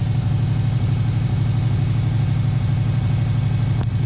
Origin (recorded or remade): recorded